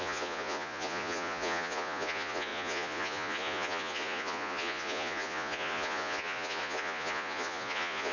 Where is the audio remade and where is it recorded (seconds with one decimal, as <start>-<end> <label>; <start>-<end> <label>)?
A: 0.0-8.1 remade